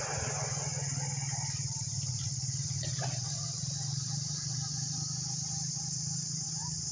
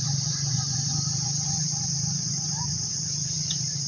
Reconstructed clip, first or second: second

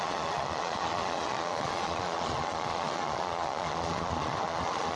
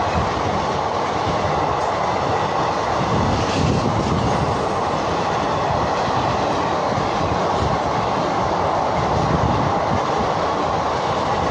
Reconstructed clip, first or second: first